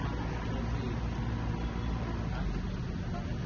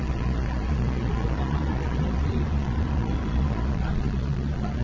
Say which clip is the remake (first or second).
second